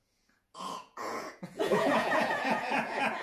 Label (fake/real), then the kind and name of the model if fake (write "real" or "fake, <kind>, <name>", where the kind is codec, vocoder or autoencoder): fake, vocoder, Vocos